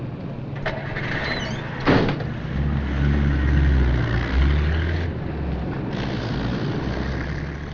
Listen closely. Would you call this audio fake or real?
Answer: real